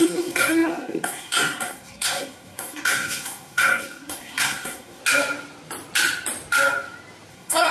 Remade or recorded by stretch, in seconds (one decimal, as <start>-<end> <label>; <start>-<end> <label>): 0.0-5.0 remade; 5.0-7.3 recorded; 7.3-7.7 remade